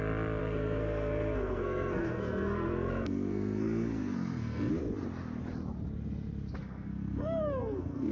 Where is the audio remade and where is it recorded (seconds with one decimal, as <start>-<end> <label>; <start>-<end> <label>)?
0.0-0.4 recorded; 0.4-4.7 remade; 4.7-6.6 recorded; 6.6-8.1 remade